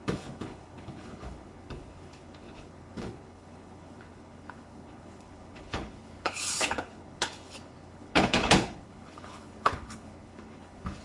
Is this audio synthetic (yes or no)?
yes